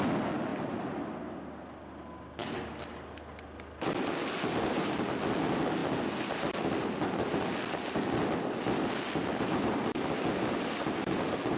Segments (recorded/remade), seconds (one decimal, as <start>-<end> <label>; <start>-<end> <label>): 0.0-11.6 recorded